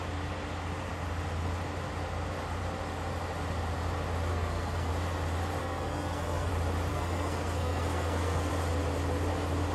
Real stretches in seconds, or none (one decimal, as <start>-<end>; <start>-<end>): 0.0-4.3; 4.9-5.6; 6.5-6.9; 8.5-9.7